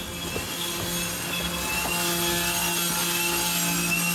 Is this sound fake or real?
real